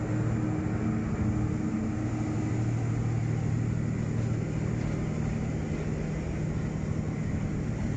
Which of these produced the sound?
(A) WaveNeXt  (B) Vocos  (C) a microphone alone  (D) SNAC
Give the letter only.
C